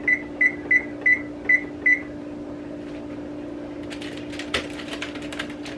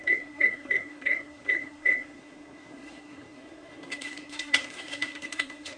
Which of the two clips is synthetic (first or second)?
second